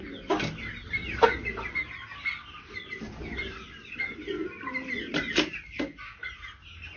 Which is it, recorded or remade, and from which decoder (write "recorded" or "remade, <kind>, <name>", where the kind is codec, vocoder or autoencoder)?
recorded